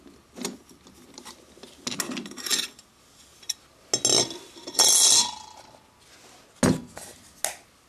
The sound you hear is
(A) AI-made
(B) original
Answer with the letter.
B